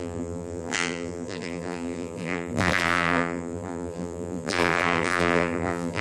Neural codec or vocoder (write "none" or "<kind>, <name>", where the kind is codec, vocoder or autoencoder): vocoder, BigVGAN v2